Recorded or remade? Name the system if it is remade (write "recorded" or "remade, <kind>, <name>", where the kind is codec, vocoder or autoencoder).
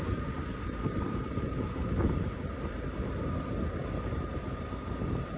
recorded